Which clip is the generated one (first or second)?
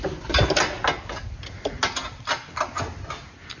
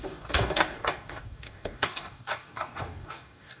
second